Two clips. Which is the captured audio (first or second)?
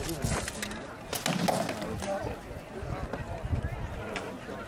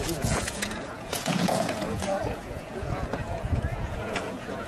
first